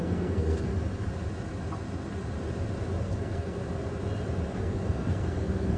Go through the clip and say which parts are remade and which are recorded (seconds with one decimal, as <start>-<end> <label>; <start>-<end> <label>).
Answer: 0.0-0.7 remade; 0.7-3.0 recorded; 3.0-3.6 remade; 3.6-4.5 recorded; 4.5-5.8 remade